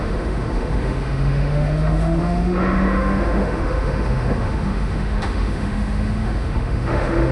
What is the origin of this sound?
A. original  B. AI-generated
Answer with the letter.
B